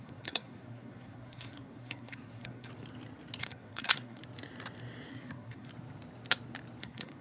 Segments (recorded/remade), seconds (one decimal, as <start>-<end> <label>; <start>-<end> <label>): 0.0-2.7 remade; 2.7-3.4 recorded; 3.4-4.2 remade; 4.2-5.1 recorded; 5.1-5.7 remade; 5.7-6.8 recorded; 6.8-7.2 remade

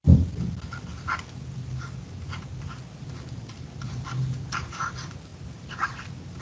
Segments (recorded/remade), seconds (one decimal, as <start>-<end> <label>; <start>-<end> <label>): 0.0-6.4 remade